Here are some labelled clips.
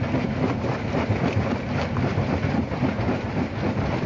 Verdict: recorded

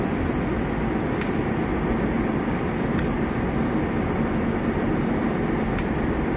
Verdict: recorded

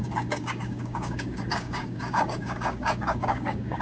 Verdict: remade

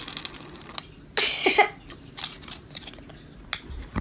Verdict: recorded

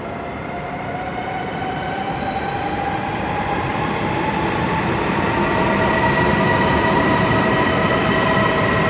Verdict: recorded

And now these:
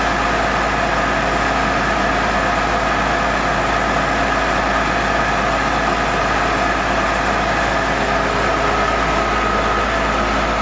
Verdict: recorded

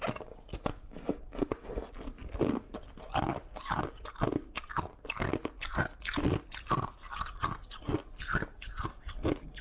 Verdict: recorded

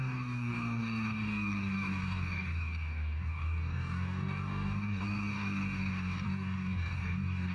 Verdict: remade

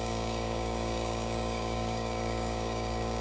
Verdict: remade